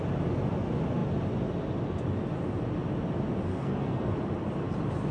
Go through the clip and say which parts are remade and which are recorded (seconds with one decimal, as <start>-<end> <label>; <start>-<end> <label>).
0.0-3.5 recorded; 3.5-4.1 remade; 4.1-5.1 recorded